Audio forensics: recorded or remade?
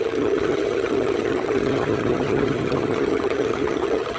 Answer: remade